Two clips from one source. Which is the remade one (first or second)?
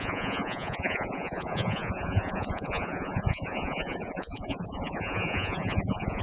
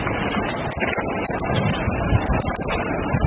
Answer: first